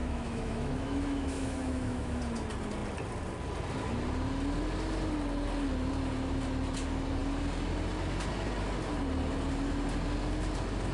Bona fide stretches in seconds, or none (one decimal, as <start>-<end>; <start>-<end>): 2.2-10.9